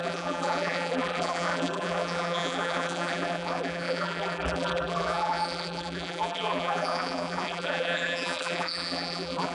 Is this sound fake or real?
fake